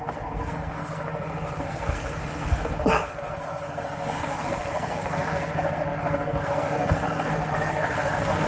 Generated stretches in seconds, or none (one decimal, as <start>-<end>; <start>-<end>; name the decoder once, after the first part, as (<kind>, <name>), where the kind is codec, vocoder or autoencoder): 0.0-8.5 (codec, SNAC)

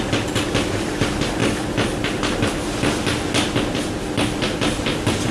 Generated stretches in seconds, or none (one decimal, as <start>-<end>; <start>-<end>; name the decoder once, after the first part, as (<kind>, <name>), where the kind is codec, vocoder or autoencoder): none

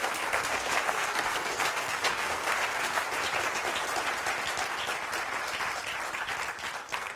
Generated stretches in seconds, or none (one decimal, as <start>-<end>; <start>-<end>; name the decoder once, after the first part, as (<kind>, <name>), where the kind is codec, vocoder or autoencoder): 0.0-3.0 (codec, SNAC); 6.8-7.2

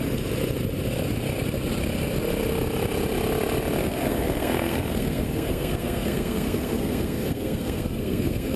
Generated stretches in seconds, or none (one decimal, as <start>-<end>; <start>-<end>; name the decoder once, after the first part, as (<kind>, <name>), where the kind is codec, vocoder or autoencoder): 3.8-8.6 (codec, SNAC)